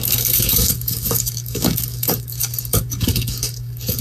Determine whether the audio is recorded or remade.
remade